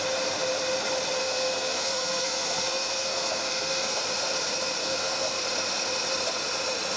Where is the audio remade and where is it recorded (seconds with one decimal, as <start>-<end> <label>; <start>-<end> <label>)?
0.0-1.2 recorded; 1.2-4.0 remade; 4.0-4.8 recorded; 4.8-5.4 remade; 5.4-7.0 recorded